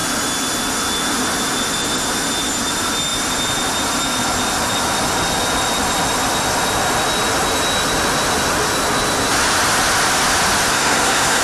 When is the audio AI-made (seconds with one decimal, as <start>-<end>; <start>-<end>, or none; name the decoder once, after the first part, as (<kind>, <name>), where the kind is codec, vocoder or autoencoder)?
10.7-11.4 (codec, SNAC)